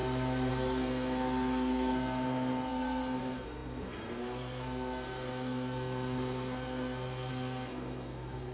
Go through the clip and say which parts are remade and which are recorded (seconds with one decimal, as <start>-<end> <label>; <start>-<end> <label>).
0.0-0.5 recorded; 0.5-8.5 remade